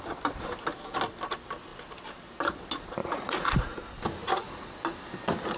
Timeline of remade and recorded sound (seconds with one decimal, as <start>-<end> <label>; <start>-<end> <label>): 0.0-3.0 recorded; 3.0-3.9 remade; 3.9-5.6 recorded